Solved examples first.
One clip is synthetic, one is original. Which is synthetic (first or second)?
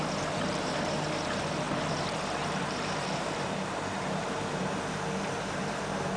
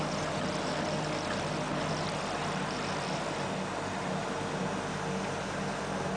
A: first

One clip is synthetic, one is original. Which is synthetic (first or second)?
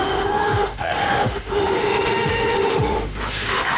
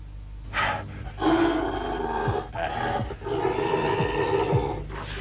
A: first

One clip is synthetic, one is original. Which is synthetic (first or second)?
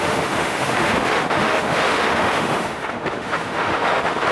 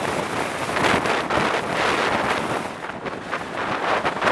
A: first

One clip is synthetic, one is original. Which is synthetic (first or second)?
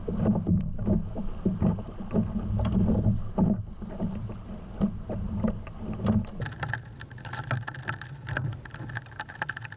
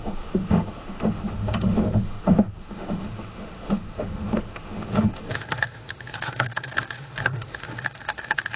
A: second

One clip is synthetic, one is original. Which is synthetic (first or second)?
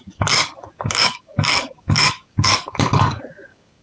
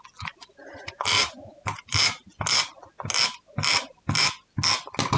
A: first